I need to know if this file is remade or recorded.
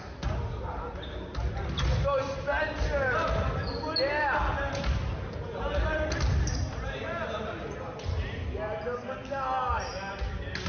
recorded